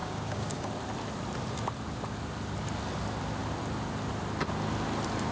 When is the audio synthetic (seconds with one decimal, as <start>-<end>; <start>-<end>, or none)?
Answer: 0.0-0.7

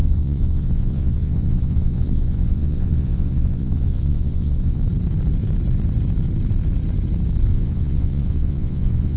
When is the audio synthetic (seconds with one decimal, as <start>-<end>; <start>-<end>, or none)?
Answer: 0.0-4.8; 7.5-9.2

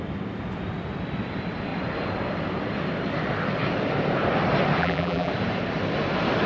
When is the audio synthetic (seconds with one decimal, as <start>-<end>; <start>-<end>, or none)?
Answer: 4.8-5.3

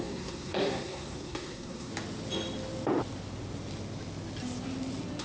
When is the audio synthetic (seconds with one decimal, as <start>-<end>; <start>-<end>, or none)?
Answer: 0.0-1.9

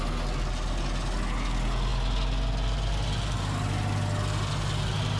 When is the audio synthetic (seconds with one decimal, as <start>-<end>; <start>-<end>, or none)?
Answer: none

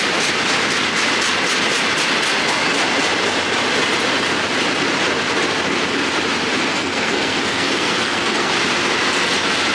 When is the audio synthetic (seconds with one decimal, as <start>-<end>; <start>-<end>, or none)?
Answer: 6.7-8.5